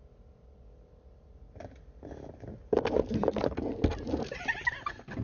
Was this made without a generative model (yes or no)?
yes